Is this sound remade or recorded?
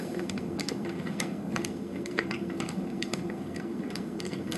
remade